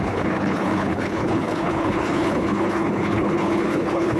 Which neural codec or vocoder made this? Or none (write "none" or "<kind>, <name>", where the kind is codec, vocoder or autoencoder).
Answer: codec, HILCodec